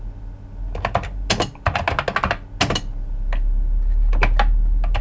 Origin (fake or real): real